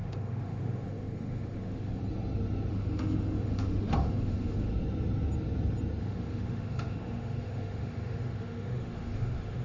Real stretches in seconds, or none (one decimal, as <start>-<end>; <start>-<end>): 2.0-2.7; 4.7-6.0